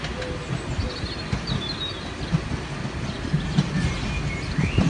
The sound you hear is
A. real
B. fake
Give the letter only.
A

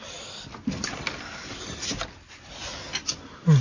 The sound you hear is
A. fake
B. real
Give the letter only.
B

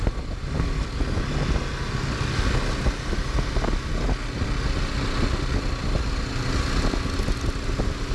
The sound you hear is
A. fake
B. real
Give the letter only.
B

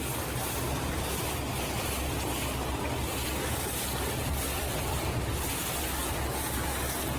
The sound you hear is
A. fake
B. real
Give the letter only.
B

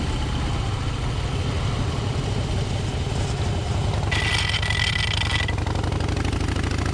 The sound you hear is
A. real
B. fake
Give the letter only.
A